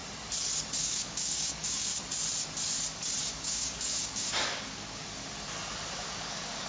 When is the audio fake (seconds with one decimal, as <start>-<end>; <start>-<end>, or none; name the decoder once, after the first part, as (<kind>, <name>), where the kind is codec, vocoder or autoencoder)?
0.8-1.9 (codec, DAC); 3.2-5.2; 5.9-6.7